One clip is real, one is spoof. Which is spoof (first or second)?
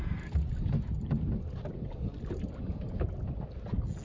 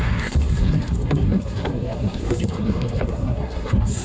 second